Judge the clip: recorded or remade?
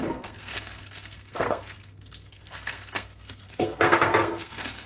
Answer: remade